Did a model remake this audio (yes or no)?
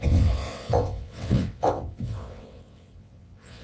yes